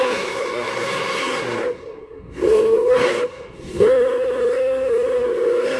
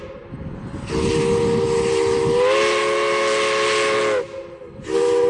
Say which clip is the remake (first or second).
first